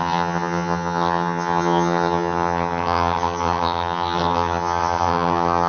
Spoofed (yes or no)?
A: yes